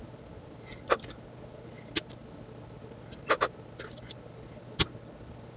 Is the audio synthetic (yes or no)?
no